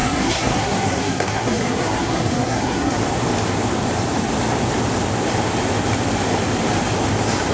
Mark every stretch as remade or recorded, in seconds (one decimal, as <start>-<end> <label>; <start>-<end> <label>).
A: 0.0-3.0 remade; 3.0-7.5 recorded